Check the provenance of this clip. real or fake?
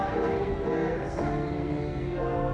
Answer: fake